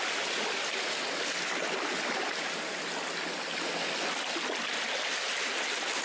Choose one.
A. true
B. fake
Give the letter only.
A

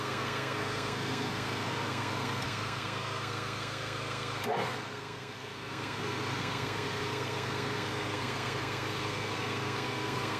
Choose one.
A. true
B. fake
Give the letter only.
B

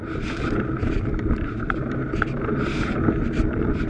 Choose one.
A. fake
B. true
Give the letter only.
B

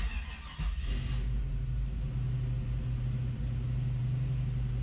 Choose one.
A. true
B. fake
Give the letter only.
A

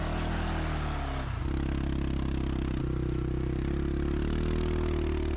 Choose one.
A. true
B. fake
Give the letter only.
A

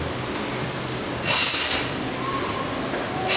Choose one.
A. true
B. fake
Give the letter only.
A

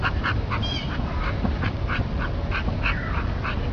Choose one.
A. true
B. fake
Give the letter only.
A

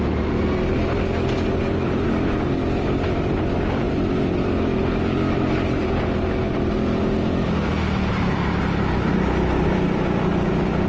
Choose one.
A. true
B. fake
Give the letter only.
A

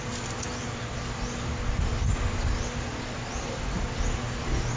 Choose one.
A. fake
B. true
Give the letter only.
B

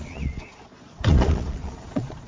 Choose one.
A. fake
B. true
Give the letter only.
A